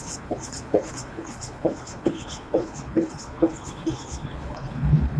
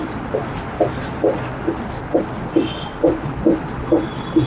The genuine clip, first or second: second